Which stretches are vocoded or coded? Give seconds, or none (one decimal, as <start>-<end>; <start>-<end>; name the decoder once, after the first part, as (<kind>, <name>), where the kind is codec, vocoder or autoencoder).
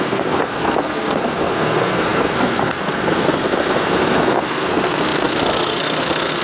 0.0-6.4 (codec, SNAC)